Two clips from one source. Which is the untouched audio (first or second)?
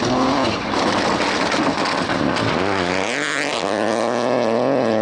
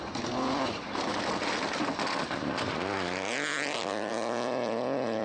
first